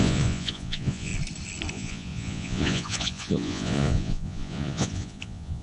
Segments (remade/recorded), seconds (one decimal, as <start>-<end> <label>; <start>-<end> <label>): 0.0-1.1 remade; 1.1-1.7 recorded; 1.7-5.6 remade